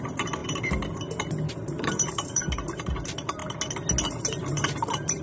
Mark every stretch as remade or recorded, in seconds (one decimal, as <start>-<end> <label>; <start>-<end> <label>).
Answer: 0.0-0.4 remade; 0.4-1.5 recorded; 1.5-3.4 remade; 3.4-4.2 recorded; 4.2-5.2 remade